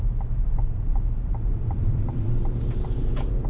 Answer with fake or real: fake